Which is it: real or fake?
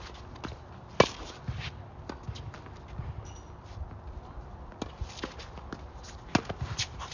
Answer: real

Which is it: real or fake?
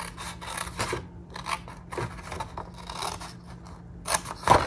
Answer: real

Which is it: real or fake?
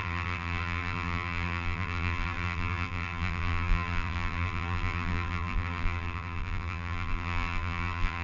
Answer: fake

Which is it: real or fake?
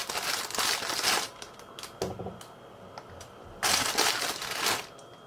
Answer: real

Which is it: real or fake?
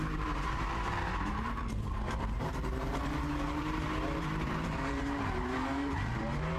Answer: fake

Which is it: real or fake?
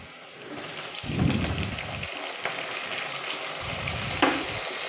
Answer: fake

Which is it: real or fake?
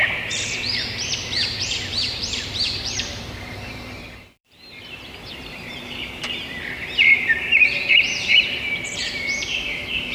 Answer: fake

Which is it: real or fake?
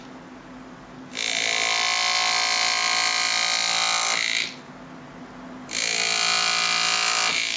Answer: real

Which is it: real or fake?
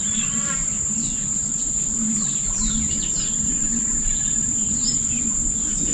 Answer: fake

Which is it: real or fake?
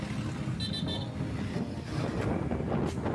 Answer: real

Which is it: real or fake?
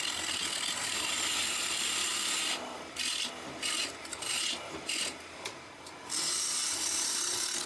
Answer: real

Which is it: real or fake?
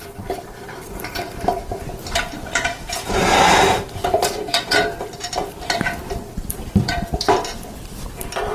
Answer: fake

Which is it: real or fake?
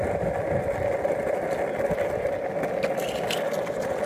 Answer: real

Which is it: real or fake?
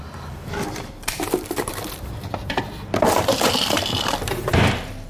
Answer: fake